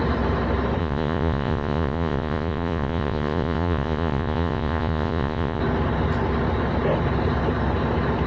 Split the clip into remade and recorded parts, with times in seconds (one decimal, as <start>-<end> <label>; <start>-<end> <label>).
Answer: 0.0-0.8 recorded; 0.8-5.6 remade; 5.6-8.3 recorded